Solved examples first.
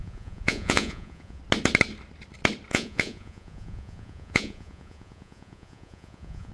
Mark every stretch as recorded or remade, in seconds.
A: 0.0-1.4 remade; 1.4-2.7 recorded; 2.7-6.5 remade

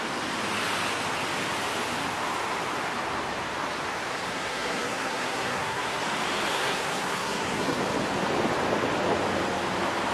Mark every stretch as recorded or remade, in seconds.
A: 0.0-4.1 recorded; 4.1-6.0 remade; 6.0-6.5 recorded; 6.5-7.8 remade; 7.8-10.1 recorded

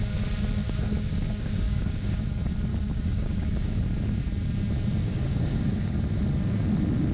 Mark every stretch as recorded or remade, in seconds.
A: 0.0-0.6 recorded; 0.6-2.3 remade; 2.3-2.7 recorded; 2.7-3.8 remade; 3.8-5.0 recorded; 5.0-6.0 remade; 6.0-7.1 recorded

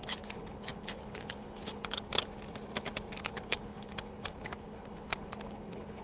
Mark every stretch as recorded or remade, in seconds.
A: 0.0-2.1 remade; 2.1-3.2 recorded; 3.2-6.0 remade

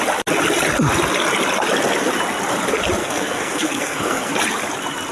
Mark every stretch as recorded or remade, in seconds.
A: 0.0-3.0 recorded; 3.0-4.3 remade; 4.3-5.1 recorded

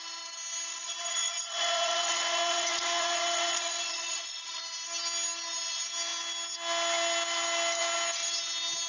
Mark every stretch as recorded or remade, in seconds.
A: 0.0-0.7 recorded; 0.7-4.6 remade; 4.6-8.9 recorded

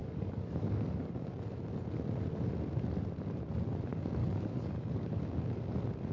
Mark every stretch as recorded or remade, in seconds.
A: 0.0-1.3 remade; 1.3-4.2 recorded; 4.2-5.2 remade; 5.2-6.1 recorded